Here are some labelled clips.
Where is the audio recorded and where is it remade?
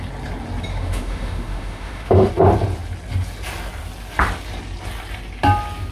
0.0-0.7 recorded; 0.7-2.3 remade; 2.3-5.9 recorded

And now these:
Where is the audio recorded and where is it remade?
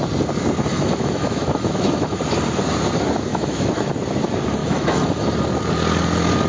0.0-0.7 recorded; 0.7-2.2 remade; 2.2-3.3 recorded; 3.3-3.9 remade; 3.9-4.6 recorded; 4.6-5.3 remade; 5.3-6.5 recorded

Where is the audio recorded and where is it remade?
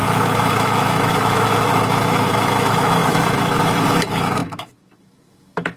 0.0-5.8 remade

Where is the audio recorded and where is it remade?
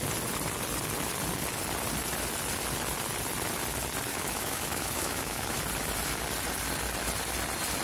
0.0-4.1 recorded; 4.1-5.6 remade; 5.6-7.8 recorded